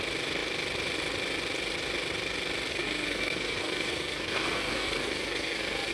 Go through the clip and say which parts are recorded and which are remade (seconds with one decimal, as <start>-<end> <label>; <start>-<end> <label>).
0.0-2.7 recorded; 2.7-5.9 remade

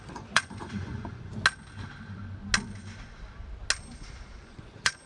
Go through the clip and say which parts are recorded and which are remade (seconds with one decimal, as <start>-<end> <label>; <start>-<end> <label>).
0.0-1.3 remade; 1.3-4.4 recorded; 4.4-5.1 remade

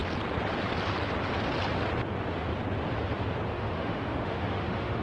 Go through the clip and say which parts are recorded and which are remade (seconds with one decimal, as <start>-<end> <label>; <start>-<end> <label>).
0.0-3.5 recorded; 3.5-5.0 remade

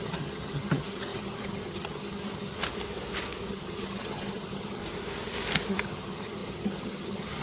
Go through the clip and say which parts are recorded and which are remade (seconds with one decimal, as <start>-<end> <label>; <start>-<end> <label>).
0.0-2.6 remade; 2.6-3.5 recorded; 3.5-4.8 remade; 4.8-5.7 recorded; 5.7-7.4 remade

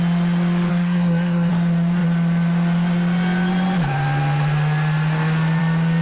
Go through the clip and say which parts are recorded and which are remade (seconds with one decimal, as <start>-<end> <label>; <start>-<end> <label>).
0.0-0.7 recorded; 0.7-1.5 remade; 1.5-6.0 recorded

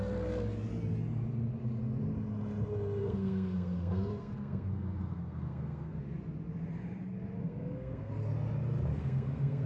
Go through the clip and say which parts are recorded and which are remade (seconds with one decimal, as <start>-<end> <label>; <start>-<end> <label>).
0.0-3.0 recorded; 3.0-6.0 remade; 6.0-7.4 recorded; 7.4-8.1 remade; 8.1-8.9 recorded; 8.9-9.7 remade